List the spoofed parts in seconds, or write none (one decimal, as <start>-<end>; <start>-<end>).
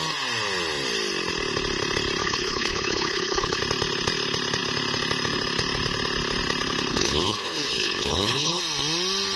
2.2-3.6; 6.9-8.6